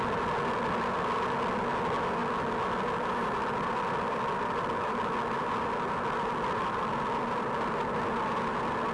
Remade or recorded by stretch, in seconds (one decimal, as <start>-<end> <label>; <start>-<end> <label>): 0.0-8.9 recorded